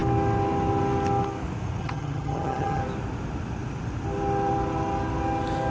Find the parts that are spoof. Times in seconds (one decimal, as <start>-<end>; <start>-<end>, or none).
1.8-2.8